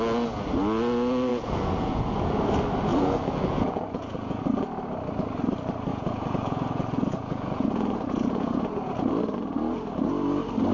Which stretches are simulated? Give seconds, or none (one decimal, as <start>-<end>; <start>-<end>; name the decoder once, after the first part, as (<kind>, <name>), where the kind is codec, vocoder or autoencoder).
1.3-2.4 (vocoder, Vocos); 2.9-4.4; 5.9-9.1